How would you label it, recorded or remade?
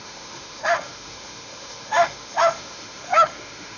remade